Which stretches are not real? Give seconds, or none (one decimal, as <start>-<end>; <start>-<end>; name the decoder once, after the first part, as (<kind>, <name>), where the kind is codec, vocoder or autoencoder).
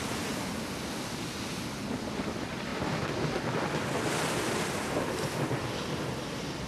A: none